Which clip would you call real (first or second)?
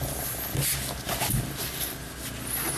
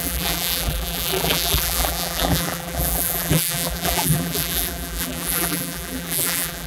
first